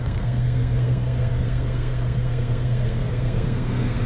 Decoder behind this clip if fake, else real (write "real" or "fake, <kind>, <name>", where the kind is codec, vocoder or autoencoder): fake, codec, SNAC